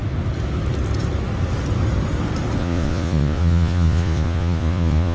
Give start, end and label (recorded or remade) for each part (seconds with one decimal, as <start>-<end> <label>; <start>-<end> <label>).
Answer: 0.0-2.6 recorded; 2.6-5.1 remade